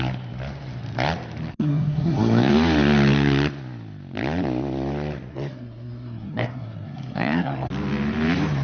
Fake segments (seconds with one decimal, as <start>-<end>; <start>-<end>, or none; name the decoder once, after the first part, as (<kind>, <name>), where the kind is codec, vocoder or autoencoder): 1.5-2.5 (codec, SNAC); 5.3-7.7

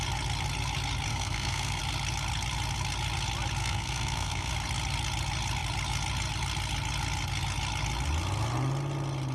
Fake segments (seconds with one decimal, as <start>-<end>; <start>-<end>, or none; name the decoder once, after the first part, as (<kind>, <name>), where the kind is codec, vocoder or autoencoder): 1.1-1.8 (codec, SNAC); 3.6-4.5

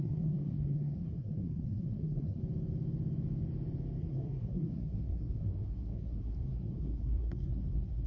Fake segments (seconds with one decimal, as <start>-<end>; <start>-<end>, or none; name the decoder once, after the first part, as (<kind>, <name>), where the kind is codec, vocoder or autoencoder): 0.0-2.4 (codec, SNAC); 4.0-8.1

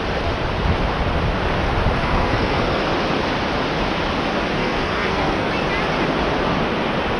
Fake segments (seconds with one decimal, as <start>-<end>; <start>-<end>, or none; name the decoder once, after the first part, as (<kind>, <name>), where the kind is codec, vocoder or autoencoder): 2.0-2.8 (codec, SNAC); 4.6-5.5

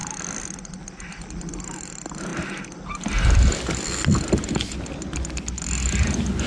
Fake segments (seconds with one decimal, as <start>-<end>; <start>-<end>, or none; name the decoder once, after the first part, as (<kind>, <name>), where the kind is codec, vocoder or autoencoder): none

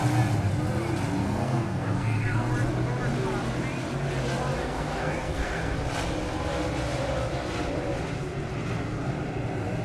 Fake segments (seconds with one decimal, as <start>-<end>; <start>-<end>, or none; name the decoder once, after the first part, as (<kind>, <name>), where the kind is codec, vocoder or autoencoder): 1.2-2.5 (codec, SNAC); 4.6-5.7

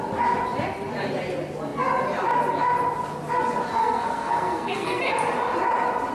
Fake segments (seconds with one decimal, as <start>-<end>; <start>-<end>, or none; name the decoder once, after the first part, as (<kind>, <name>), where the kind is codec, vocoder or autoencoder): 3.8-5.0 (codec, SNAC)

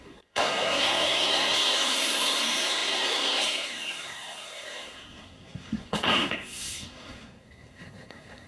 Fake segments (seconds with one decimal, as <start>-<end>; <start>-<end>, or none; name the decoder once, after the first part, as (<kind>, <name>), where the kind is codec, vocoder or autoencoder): 0.0-8.5 (codec, SNAC)